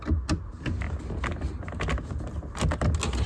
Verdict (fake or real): real